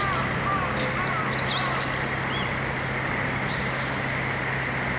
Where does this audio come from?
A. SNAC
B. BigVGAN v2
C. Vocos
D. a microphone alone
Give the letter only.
D